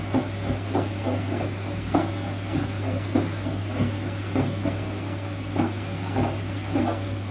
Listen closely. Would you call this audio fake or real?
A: fake